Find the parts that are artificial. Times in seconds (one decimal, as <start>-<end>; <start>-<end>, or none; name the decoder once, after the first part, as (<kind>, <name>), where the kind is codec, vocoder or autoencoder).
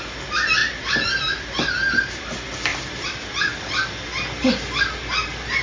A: 0.6-2.2 (vocoder, BigVGAN v2); 2.7-3.5